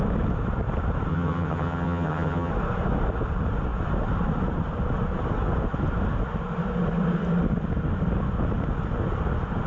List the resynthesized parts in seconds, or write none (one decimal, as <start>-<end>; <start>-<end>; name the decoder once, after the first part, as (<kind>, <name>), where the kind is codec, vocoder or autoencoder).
1.1-2.5 (vocoder, HiFi-GAN)